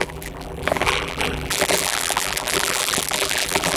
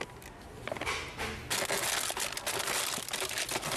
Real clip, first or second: second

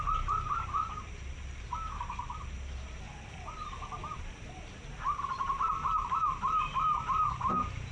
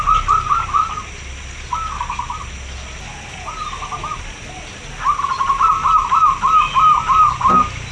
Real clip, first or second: second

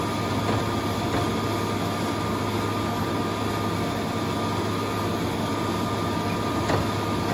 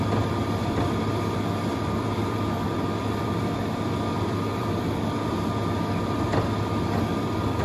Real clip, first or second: first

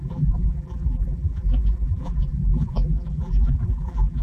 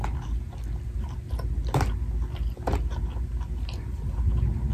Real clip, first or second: second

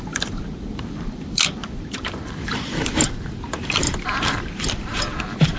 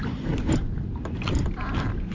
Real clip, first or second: second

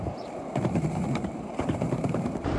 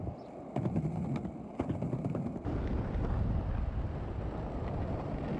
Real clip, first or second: second